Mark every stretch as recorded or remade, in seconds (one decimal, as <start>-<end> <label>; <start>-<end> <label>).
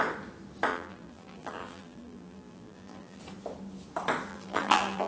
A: 0.0-0.7 recorded; 0.7-3.2 remade; 3.2-4.3 recorded; 4.3-5.1 remade